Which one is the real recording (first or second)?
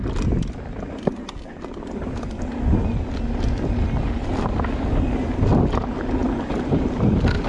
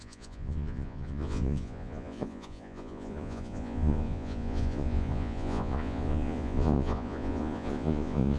first